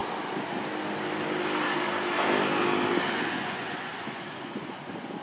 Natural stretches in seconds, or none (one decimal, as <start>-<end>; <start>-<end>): 0.0-3.1